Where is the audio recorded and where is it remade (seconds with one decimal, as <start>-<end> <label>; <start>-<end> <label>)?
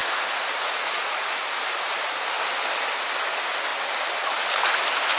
0.0-1.4 remade; 1.4-5.2 recorded